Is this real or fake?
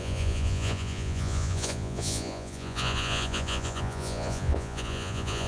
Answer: fake